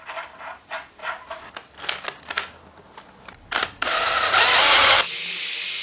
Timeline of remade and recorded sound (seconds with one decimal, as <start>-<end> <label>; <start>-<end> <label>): 0.0-5.8 recorded